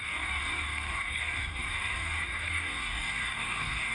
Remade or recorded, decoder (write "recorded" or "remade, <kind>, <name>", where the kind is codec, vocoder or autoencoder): remade, codec, DAC